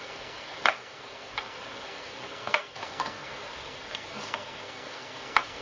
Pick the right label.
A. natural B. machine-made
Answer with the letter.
B